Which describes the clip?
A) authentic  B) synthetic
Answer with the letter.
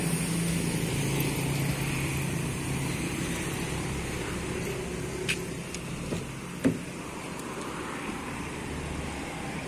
A